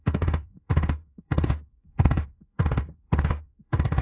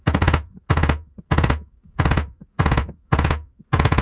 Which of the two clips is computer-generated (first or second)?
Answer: first